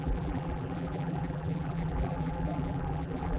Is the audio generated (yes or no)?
yes